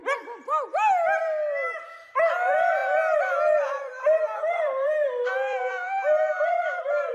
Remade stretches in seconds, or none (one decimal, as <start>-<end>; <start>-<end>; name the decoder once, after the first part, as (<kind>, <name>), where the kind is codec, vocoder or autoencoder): 1.2-7.1 (vocoder, BigVGAN v2)